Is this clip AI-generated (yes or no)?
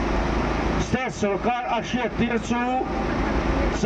no